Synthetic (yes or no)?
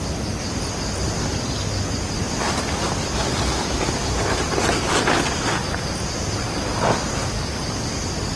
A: no